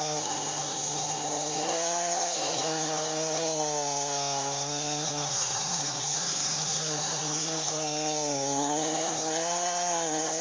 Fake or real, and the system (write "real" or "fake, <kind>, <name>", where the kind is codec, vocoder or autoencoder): fake, codec, SNAC